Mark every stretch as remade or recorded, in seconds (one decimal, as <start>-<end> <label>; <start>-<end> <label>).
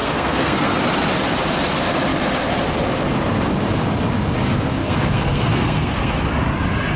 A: 0.0-0.7 remade; 0.7-4.8 recorded; 4.8-6.2 remade; 6.2-7.0 recorded